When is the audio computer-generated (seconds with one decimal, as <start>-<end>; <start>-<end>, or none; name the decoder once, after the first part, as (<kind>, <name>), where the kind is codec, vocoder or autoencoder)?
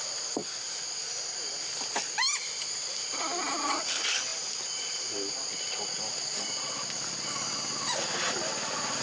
none